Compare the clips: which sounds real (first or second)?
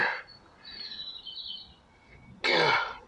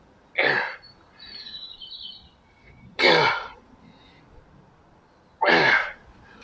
first